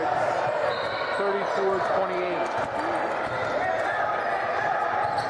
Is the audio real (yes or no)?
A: yes